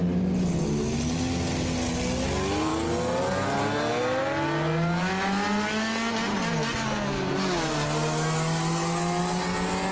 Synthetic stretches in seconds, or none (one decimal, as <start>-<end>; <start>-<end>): none